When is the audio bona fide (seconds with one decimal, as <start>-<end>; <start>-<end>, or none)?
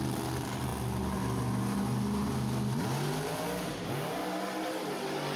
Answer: 0.0-5.4